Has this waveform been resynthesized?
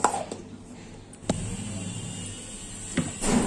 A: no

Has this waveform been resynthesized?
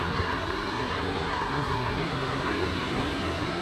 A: yes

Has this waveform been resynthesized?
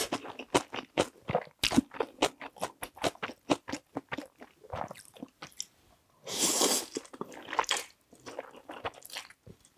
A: no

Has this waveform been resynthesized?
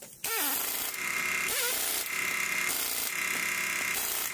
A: no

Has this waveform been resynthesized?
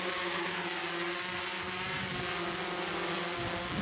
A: no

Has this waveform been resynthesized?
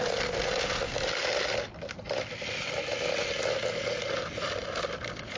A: no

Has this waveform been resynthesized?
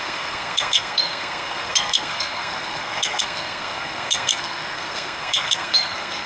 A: yes